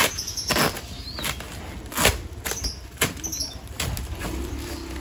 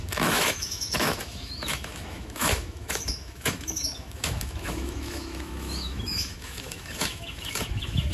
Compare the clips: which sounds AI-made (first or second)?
second